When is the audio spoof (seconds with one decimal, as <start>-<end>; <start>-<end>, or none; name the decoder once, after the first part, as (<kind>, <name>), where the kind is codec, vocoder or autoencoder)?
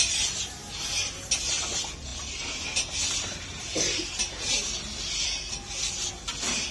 none